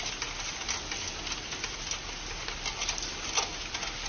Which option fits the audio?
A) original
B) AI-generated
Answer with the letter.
A